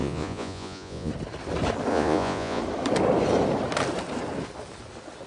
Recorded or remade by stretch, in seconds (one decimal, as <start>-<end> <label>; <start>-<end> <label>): 0.0-1.1 remade; 1.1-1.9 recorded; 1.9-2.6 remade; 2.6-5.3 recorded